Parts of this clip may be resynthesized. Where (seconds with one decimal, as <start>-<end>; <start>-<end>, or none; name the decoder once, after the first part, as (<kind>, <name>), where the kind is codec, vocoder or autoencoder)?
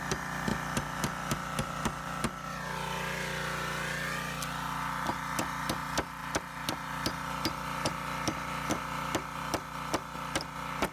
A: none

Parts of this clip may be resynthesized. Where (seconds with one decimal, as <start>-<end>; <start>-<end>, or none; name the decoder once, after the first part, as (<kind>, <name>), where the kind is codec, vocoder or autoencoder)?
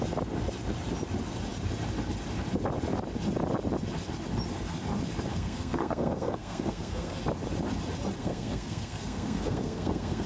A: 5.3-7.2 (codec, SNAC); 8.2-10.3